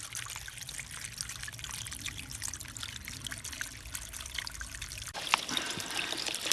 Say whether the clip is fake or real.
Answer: real